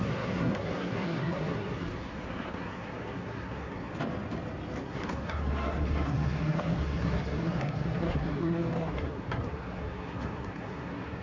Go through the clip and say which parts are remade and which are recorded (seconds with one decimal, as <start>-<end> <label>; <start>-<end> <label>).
0.0-3.9 remade; 3.9-4.8 recorded; 4.8-11.2 remade